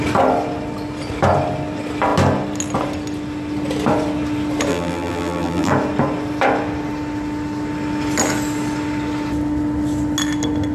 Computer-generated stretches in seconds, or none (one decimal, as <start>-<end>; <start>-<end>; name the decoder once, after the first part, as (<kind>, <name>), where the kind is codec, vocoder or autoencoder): 4.7-5.7 (vocoder, BigVGAN v2)

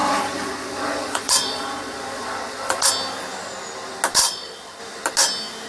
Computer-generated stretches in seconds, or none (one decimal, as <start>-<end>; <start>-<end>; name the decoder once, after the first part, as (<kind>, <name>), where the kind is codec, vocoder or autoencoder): 0.0-2.9 (vocoder, Vocos); 4.2-4.8

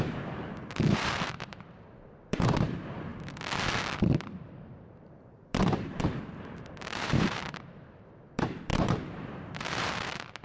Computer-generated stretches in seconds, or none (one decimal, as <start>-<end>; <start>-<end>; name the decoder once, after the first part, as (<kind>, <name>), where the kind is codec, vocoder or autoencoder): 0.0-3.1 (vocoder, BigVGAN v2); 4.0-10.4